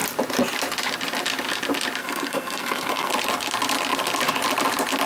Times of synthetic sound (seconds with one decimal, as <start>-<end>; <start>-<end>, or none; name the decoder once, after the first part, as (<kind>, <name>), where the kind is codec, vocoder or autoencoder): 2.0-3.1 (codec, SNAC)